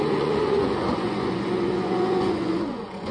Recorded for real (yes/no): no